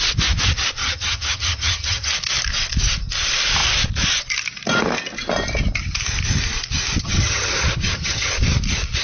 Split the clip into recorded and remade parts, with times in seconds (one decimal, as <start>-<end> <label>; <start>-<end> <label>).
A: 0.0-0.8 recorded; 0.8-2.1 remade; 2.1-7.0 recorded; 7.0-8.3 remade; 8.3-9.0 recorded